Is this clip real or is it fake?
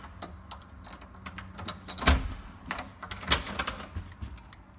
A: real